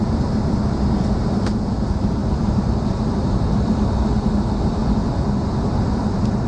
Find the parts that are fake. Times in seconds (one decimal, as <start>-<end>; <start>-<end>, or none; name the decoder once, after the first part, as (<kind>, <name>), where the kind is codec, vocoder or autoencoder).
0.0-0.6 (vocoder, BigVGAN v2); 1.3-4.8; 5.9-6.5